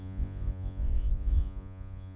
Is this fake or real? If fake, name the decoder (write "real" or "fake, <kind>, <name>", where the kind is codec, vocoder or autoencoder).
fake, vocoder, Vocos